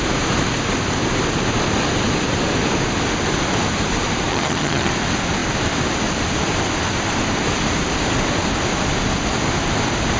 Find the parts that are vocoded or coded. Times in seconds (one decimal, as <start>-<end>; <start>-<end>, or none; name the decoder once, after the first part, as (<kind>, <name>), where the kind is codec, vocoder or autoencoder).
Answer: 4.3-4.9 (vocoder, HiFi-GAN)